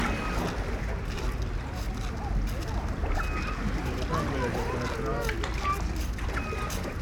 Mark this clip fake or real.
real